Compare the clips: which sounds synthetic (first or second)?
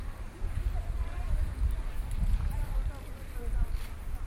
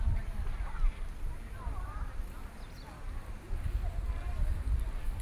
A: first